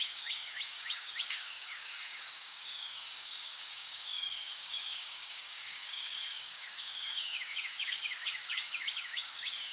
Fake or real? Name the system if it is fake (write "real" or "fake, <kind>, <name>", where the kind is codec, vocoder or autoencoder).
fake, codec, DAC